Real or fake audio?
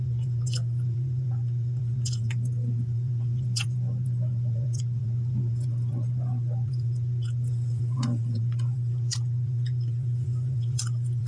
fake